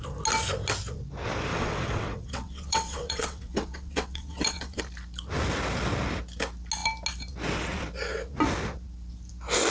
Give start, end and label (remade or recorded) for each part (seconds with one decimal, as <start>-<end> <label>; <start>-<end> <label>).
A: 0.0-1.5 recorded; 1.5-4.8 remade; 4.8-9.7 recorded